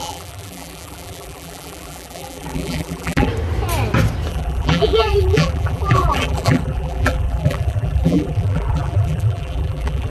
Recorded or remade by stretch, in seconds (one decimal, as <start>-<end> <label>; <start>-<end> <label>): 0.0-3.3 remade; 3.3-4.3 recorded; 4.3-10.1 remade